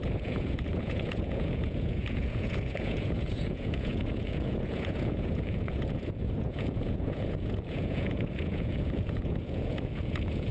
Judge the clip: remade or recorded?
remade